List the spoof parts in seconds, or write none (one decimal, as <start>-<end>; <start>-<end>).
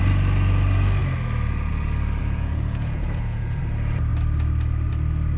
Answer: 2.2-3.6